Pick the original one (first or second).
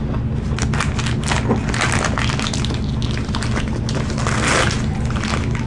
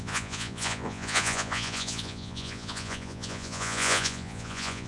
first